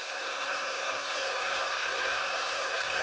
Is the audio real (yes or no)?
no